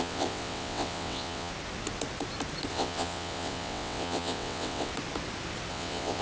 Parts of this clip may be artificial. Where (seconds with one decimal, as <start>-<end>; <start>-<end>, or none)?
0.0-1.5; 2.7-4.9; 5.7-6.2

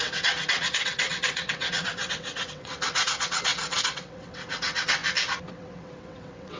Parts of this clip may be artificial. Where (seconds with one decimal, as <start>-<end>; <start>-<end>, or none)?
0.0-5.0; 5.5-6.6

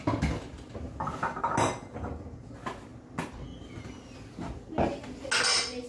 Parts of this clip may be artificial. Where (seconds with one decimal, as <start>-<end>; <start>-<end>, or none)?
none

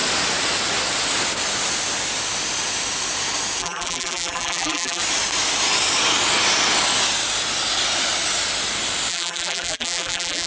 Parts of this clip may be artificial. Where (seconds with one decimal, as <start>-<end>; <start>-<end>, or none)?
3.6-5.0; 9.1-10.5